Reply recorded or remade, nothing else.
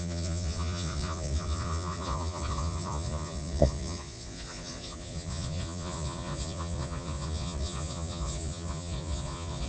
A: remade